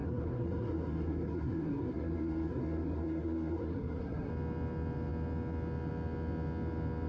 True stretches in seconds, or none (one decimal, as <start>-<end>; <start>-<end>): 4.3-7.1